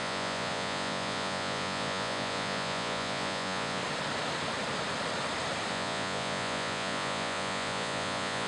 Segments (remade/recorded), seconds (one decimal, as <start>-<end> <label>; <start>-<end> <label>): 0.0-3.8 remade; 3.8-5.7 recorded; 5.7-8.5 remade

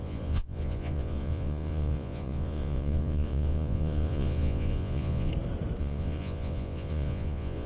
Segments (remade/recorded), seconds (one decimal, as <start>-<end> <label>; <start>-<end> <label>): 0.0-5.3 remade; 5.3-5.8 recorded; 5.8-7.7 remade

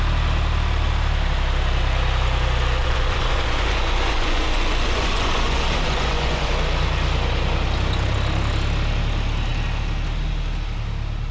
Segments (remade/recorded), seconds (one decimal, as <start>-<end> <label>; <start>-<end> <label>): 0.0-2.8 recorded; 2.8-6.5 remade; 6.5-11.3 recorded

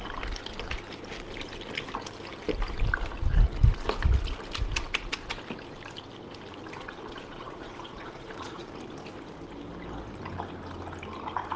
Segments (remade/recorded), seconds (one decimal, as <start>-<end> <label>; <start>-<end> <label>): 0.0-6.8 recorded; 6.8-8.7 remade; 8.7-11.6 recorded